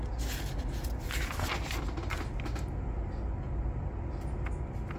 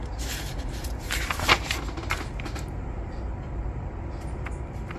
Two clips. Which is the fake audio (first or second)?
second